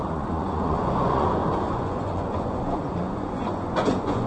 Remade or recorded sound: remade